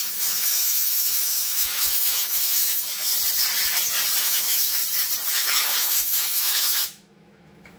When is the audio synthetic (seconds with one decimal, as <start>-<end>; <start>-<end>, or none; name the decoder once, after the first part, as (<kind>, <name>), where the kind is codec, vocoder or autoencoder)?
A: 0.0-3.1 (autoencoder, DAC-VAE); 4.2-4.8; 5.3-7.8